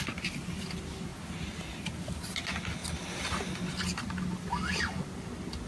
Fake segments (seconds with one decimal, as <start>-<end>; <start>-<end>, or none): none